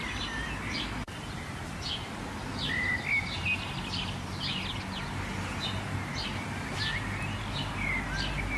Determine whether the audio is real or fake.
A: real